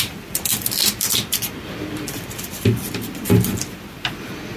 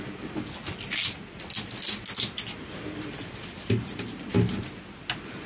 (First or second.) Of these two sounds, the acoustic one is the second